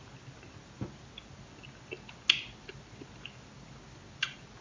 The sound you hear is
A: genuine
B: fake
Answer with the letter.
A